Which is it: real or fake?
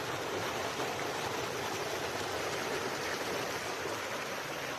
real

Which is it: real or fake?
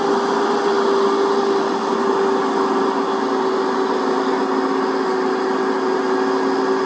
real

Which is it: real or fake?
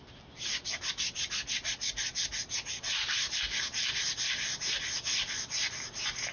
real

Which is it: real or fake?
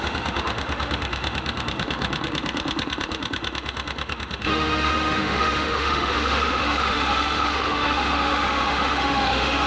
fake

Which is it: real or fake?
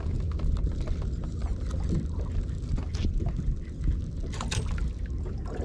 real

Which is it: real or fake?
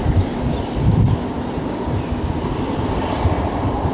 real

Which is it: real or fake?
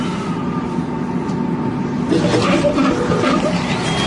real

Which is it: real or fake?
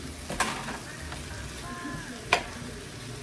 real